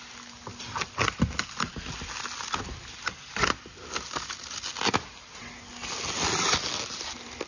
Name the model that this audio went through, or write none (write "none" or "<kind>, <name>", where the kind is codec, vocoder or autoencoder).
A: none